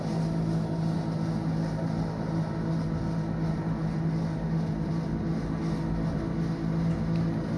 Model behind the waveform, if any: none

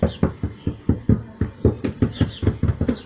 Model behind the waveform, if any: none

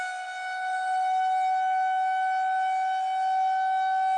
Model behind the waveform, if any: none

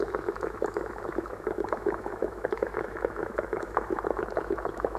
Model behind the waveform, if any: autoencoder, DAC-VAE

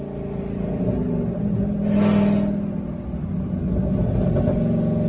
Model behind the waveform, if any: none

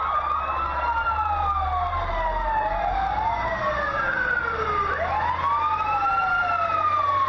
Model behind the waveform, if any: none